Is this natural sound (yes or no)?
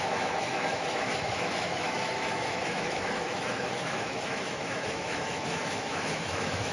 no